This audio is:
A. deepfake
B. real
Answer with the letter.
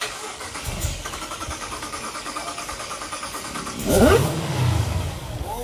A